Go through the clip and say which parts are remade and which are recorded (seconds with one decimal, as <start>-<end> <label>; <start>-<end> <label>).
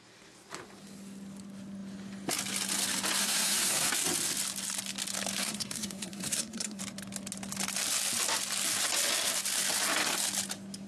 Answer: 0.0-3.2 recorded; 3.2-3.9 remade; 3.9-5.4 recorded; 5.4-6.8 remade; 6.8-10.9 recorded